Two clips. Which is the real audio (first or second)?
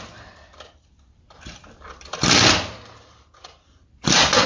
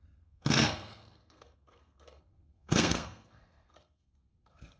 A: first